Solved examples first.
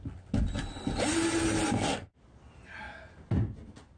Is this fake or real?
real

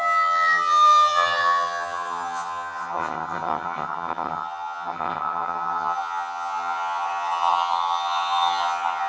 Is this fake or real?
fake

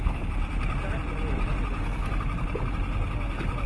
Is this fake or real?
real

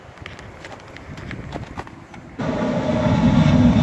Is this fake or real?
real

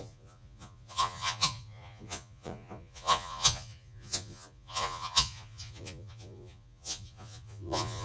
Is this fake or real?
fake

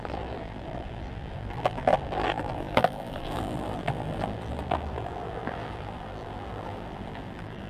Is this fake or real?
fake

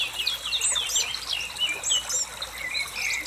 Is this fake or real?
real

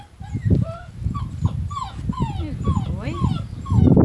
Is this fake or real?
real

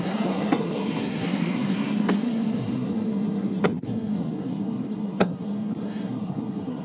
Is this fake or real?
fake